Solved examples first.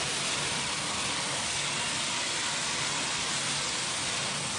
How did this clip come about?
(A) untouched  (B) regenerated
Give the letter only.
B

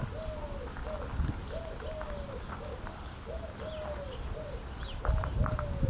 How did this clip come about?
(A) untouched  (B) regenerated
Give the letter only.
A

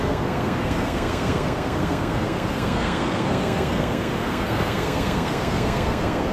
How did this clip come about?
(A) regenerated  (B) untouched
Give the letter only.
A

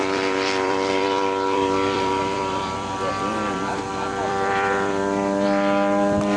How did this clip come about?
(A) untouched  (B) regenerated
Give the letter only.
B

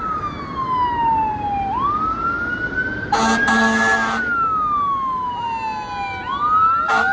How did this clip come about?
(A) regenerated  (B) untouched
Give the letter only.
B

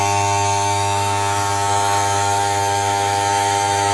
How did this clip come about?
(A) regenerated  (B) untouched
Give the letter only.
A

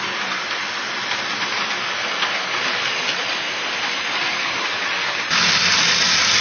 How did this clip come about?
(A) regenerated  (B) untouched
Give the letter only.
B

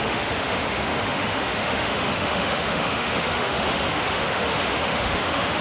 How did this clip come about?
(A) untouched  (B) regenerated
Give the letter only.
B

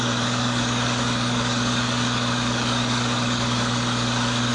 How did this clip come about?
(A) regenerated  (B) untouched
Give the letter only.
A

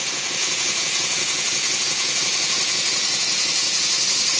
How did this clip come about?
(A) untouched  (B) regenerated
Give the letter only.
B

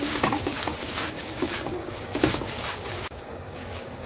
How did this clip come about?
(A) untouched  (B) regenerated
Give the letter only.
B